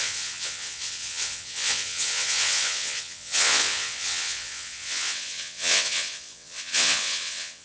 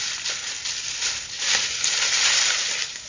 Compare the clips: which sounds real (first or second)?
second